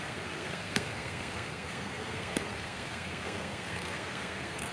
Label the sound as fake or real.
fake